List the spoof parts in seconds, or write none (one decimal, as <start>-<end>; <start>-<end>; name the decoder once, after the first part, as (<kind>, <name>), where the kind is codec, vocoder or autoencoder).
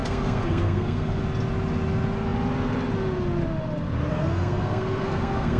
0.0-1.2 (codec, SNAC); 4.1-5.6